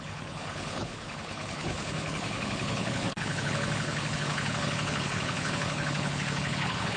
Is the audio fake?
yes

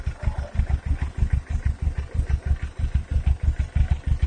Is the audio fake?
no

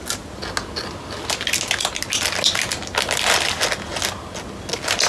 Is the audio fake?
no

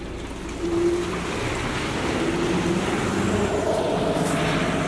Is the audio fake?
no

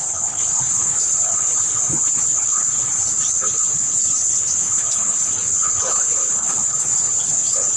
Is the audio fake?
yes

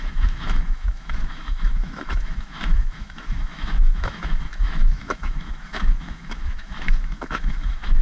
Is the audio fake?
yes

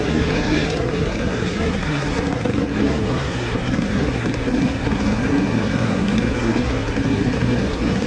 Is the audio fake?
yes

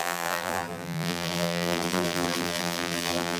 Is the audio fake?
yes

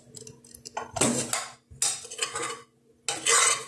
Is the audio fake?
no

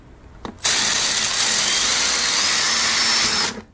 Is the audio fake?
no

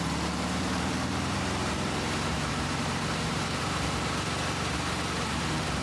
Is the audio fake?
yes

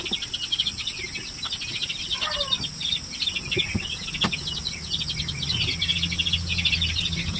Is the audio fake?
no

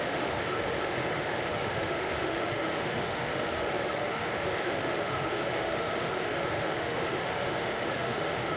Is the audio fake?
yes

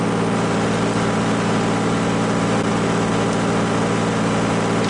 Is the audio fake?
no